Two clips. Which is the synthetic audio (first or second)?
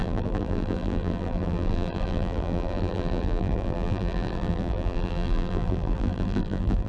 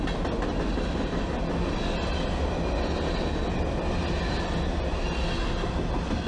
first